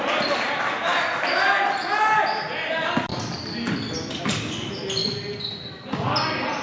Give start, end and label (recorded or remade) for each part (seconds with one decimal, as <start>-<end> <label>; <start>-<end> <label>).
0.0-6.6 recorded